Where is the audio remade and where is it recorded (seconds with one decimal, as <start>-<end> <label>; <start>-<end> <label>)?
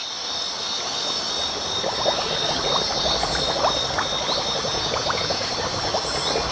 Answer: 0.0-4.7 recorded; 4.7-5.5 remade; 5.5-6.5 recorded